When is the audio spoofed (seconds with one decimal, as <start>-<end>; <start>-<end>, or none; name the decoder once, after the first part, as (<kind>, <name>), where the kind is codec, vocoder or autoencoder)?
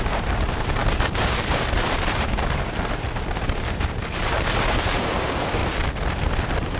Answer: 0.0-5.6 (vocoder, BigVGAN v2); 6.2-6.8